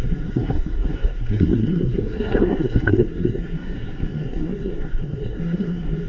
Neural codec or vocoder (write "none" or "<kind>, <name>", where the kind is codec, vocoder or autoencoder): codec, SNAC